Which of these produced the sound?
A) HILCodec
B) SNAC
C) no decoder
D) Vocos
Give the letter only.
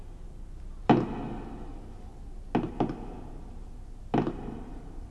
C